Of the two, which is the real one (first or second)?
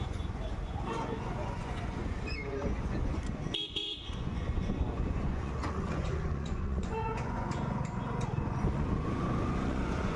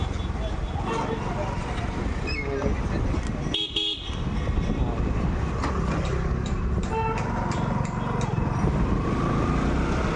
second